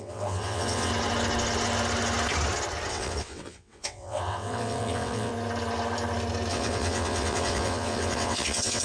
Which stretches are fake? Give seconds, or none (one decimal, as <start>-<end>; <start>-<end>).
0.0-0.9; 2.9-5.3; 6.5-8.8